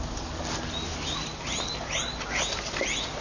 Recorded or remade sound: recorded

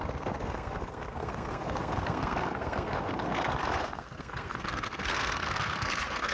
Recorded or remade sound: remade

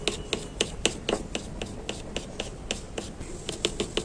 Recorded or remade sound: recorded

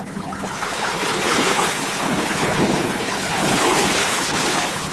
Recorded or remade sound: remade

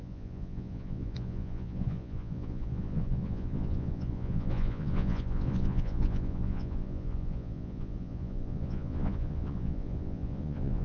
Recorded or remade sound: remade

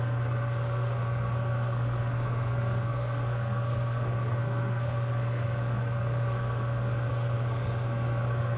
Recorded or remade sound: remade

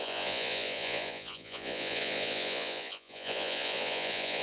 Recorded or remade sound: remade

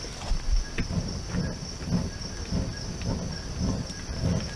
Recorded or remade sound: recorded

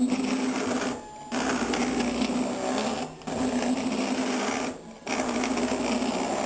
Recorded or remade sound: recorded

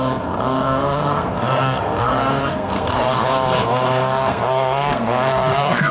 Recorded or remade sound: remade